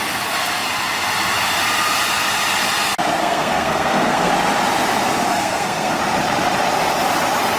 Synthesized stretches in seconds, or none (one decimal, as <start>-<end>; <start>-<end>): 3.2-4.3; 5.3-6.0